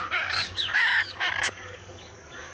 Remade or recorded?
remade